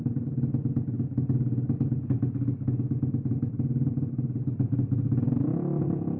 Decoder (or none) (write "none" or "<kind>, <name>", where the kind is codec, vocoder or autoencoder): none